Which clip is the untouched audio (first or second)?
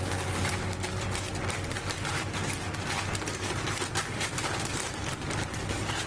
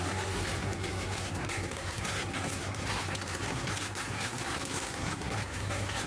first